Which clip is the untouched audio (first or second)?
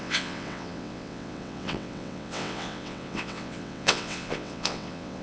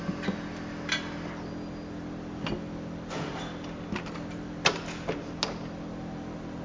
second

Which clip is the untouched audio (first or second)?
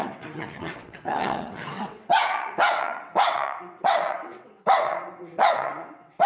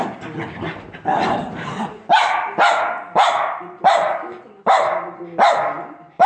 second